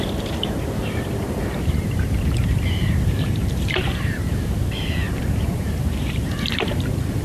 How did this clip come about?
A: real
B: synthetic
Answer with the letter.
B